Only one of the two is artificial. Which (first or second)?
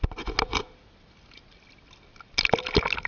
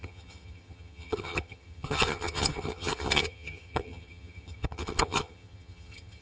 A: second